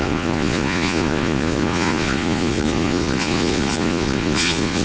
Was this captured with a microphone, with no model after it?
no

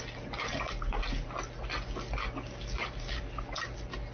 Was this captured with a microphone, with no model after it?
yes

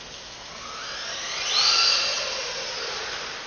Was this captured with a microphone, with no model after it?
yes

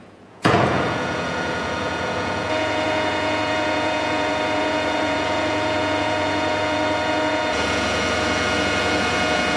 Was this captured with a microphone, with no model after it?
no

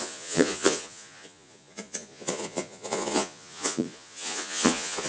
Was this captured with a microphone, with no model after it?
no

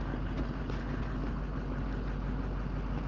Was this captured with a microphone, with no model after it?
yes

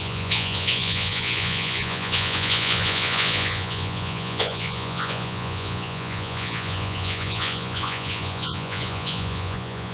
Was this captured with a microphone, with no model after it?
no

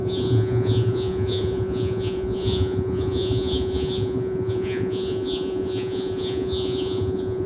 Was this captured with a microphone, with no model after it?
no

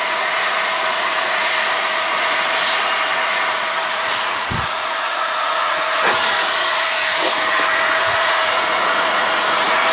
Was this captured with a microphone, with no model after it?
no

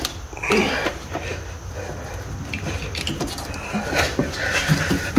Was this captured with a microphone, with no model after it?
yes